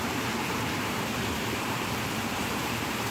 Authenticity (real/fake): fake